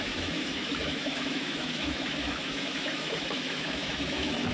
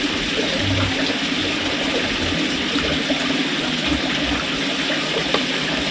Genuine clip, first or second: second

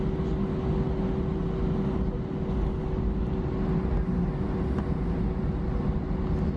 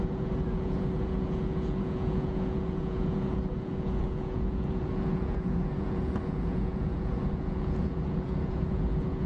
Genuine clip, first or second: first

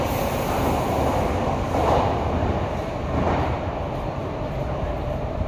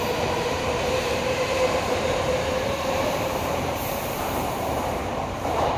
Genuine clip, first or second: first